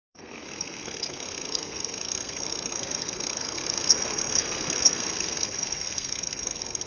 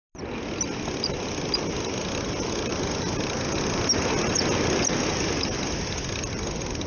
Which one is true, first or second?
second